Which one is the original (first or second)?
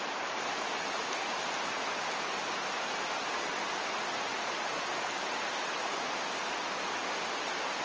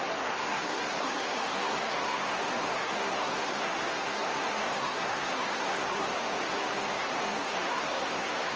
first